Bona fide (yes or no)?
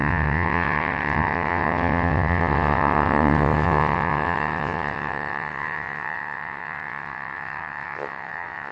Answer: no